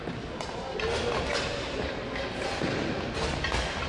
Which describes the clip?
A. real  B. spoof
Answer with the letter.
A